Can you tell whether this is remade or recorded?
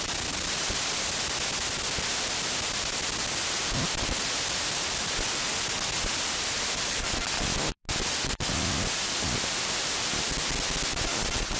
recorded